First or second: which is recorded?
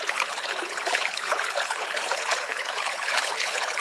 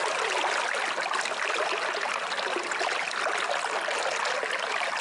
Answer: second